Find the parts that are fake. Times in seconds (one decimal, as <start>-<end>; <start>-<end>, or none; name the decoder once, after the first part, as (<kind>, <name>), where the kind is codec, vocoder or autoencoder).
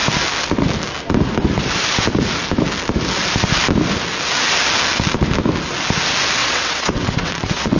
6.4-7.8 (vocoder, WaveNeXt)